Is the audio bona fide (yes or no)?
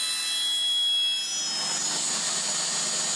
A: yes